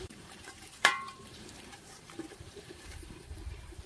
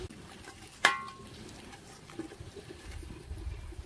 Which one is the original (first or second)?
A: second